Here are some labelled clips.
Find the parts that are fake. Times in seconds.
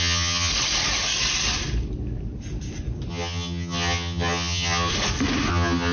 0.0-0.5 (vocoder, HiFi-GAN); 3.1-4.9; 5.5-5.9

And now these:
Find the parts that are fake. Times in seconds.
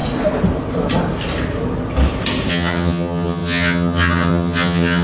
2.5-5.0 (vocoder, HiFi-GAN)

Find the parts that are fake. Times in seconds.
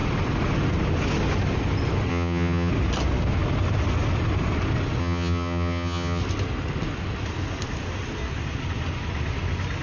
2.1-2.7 (vocoder, HiFi-GAN); 5.0-6.2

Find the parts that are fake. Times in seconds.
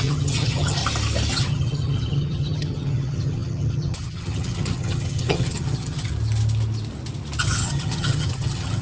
0.0-0.8 (vocoder, HiFi-GAN); 1.3-6.1; 7.4-8.8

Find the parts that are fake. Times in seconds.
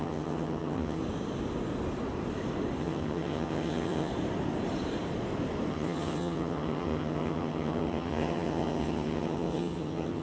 0.0-1.0 (vocoder, HiFi-GAN); 2.8-4.1; 5.7-10.2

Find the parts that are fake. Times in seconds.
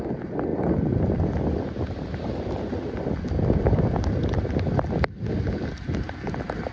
none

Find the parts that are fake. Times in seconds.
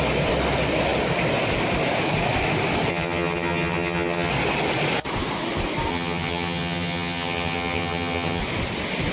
2.9-4.3 (vocoder, HiFi-GAN); 5.9-8.4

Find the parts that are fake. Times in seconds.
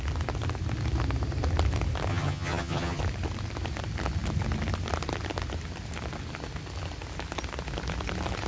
2.1-3.0 (vocoder, HiFi-GAN)